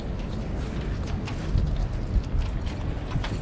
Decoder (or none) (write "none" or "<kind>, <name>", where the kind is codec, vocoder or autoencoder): none